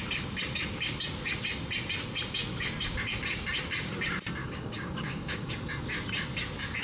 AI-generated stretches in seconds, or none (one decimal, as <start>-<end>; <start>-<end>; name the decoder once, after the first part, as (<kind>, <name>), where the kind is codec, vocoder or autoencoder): 4.4-5.5 (codec, DAC)